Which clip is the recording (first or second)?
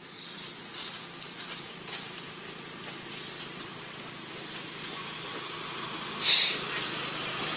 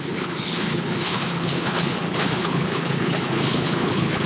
first